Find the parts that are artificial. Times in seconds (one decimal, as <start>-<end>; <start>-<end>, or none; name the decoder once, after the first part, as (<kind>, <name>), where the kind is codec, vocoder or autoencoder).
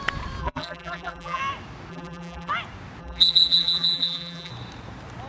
0.4-1.4 (vocoder, BigVGAN v2); 1.9-2.5; 3.0-4.5